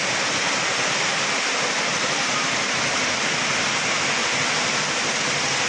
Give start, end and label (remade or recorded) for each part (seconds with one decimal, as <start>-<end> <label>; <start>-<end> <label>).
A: 0.0-5.7 recorded